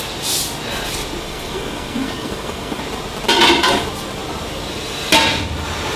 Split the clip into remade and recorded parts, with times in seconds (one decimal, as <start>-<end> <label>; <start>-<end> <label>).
0.0-1.2 recorded; 1.2-2.8 remade; 2.8-6.0 recorded